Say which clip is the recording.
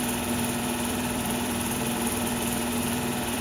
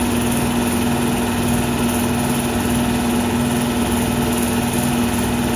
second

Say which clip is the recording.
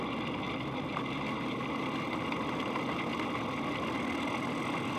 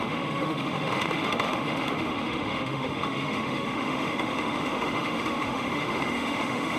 first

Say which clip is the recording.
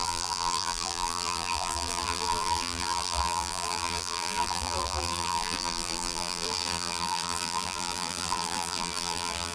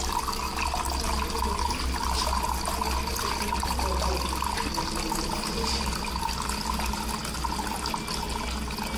second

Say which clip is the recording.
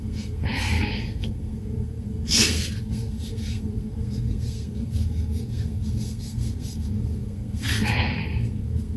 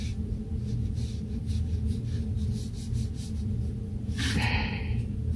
second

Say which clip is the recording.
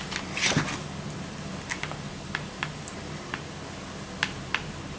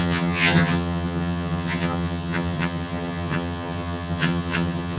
first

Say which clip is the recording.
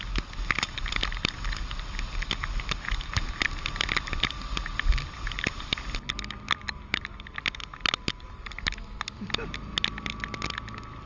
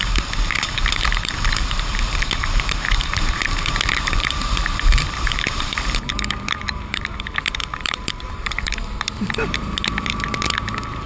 first